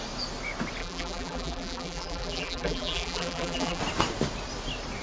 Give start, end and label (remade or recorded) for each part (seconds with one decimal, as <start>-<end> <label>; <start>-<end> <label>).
0.0-0.8 recorded; 0.8-3.8 remade; 3.8-5.0 recorded